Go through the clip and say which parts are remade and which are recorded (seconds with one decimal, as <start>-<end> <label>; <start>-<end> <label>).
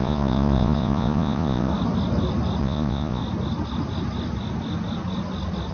0.0-1.7 remade; 1.7-2.6 recorded; 2.6-3.2 remade; 3.2-5.7 recorded